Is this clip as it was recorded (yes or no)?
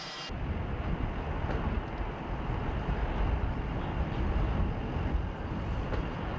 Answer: yes